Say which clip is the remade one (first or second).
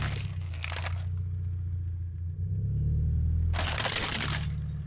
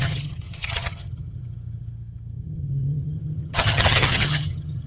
second